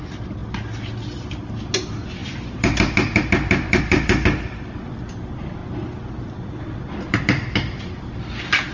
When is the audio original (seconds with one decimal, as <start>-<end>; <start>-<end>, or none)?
0.0-8.7